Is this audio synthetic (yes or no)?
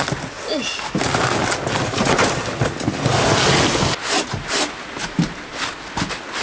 no